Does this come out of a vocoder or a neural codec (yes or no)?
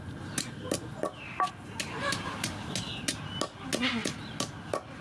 no